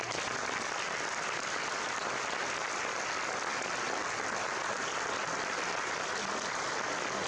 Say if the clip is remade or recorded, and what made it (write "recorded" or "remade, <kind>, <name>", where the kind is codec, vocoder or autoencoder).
recorded